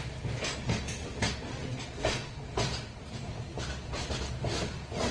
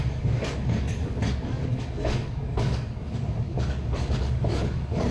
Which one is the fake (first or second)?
second